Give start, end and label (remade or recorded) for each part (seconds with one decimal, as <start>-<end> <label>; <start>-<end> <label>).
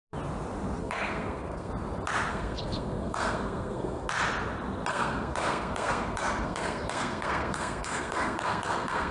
0.0-0.8 recorded; 0.8-1.7 remade; 1.7-2.3 recorded; 2.3-4.1 remade; 4.1-4.9 recorded; 4.9-9.1 remade